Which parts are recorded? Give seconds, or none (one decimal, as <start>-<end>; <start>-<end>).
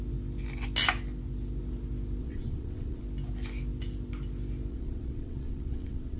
0.0-2.2; 3.0-4.7